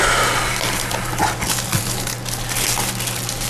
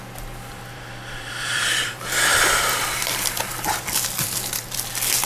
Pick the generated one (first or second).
second